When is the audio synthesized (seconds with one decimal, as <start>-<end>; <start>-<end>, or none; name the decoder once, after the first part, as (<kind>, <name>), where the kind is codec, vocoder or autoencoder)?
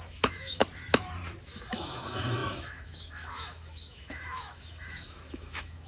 0.0-0.6 (autoencoder, DAC-VAE); 1.4-5.9